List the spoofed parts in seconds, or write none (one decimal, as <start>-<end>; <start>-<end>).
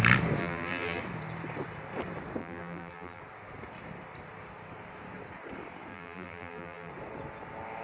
0.4-1.0; 2.4-3.2; 5.9-6.9